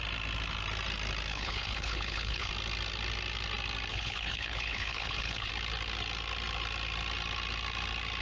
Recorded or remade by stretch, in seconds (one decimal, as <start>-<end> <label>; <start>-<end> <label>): 0.0-1.3 recorded; 1.3-2.5 remade; 2.5-3.9 recorded; 3.9-5.5 remade; 5.5-8.2 recorded